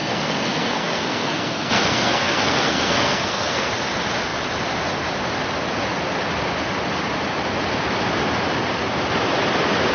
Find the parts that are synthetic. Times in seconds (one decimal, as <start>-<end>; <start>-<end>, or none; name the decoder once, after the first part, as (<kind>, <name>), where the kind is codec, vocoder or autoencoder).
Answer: 0.0-3.7 (codec, SNAC)